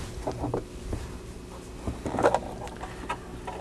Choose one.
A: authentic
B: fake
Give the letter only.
A